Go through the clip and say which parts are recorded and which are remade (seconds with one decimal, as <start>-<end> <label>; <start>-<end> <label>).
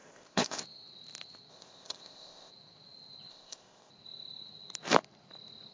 0.0-0.6 remade; 0.6-1.5 recorded; 1.5-2.5 remade; 2.5-3.3 recorded; 3.3-3.9 remade; 3.9-5.7 recorded